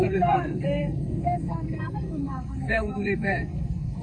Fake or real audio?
fake